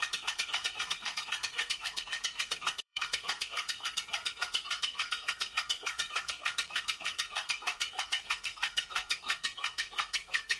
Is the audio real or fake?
fake